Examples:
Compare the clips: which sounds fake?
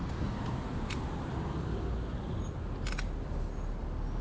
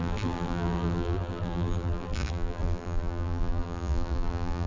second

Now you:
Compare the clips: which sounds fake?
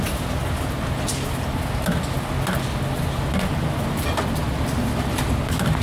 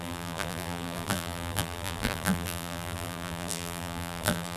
second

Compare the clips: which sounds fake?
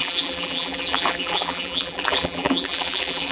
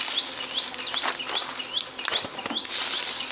first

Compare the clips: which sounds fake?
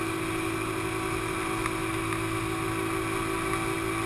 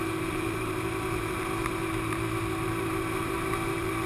second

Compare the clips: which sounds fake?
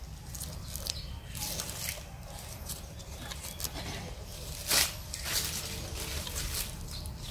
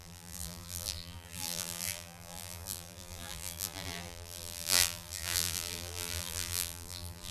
second